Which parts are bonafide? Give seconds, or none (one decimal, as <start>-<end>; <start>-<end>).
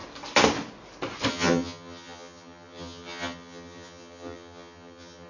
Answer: 0.0-1.3